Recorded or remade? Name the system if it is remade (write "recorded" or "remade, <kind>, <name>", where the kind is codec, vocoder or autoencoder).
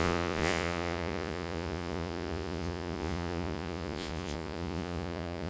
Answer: remade, vocoder, Vocos